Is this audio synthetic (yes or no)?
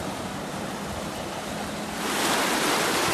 no